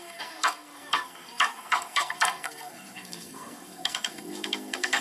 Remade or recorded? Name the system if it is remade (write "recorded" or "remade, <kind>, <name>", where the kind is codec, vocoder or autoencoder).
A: remade, codec, SNAC